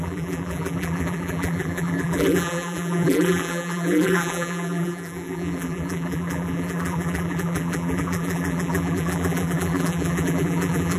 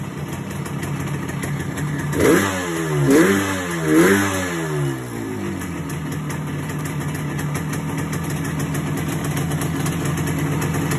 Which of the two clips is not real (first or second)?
first